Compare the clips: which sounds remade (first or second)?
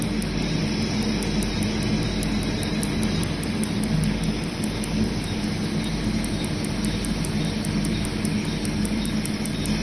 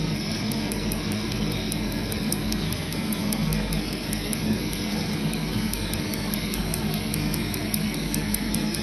second